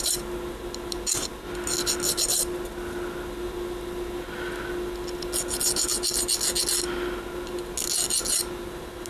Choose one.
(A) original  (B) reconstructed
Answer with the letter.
A